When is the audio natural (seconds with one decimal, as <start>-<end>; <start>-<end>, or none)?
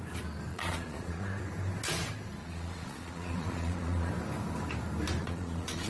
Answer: 0.0-0.5; 1.4-2.4; 4.1-5.2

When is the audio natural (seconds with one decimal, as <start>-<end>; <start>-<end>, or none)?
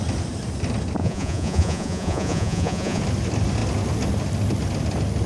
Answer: 0.0-1.0; 3.0-5.3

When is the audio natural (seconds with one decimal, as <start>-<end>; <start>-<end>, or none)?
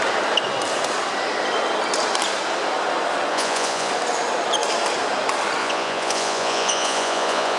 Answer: 0.0-3.3; 3.9-5.6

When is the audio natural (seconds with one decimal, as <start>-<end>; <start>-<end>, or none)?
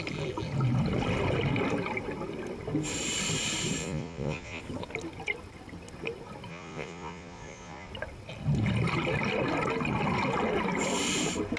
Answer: 0.0-3.8; 4.6-6.5; 7.9-11.6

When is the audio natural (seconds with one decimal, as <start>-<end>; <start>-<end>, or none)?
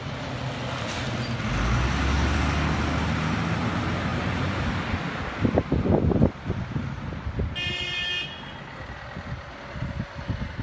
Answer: 0.0-10.6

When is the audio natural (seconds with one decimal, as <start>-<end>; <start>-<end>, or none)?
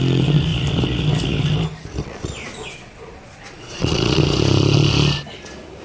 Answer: 0.0-2.0; 4.2-5.8